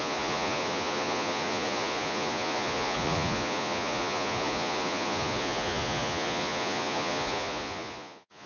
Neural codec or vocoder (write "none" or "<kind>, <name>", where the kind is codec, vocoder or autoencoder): vocoder, Vocos